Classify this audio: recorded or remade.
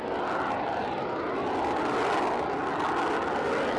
recorded